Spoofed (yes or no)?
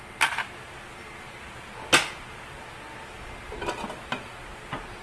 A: no